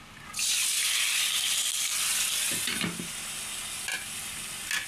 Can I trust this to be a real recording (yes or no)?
yes